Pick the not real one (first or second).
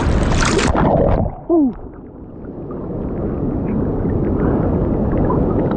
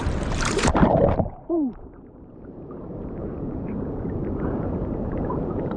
second